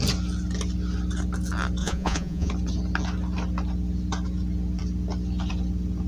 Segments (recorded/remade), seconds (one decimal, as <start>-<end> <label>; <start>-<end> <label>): 0.0-1.8 recorded; 1.8-2.5 remade; 2.5-6.1 recorded